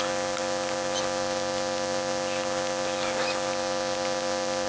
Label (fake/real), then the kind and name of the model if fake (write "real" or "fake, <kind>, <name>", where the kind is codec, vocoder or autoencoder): real